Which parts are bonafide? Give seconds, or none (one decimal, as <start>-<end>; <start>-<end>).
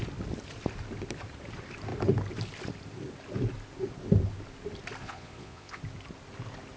0.0-5.0; 5.8-6.8